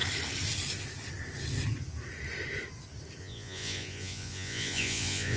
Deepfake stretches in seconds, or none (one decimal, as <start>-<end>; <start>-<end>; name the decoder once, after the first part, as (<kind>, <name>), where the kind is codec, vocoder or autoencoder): 3.2-5.4 (vocoder, Vocos)